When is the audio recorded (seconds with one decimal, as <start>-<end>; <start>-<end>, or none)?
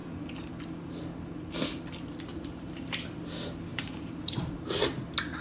0.0-2.3; 2.9-3.7; 4.8-5.4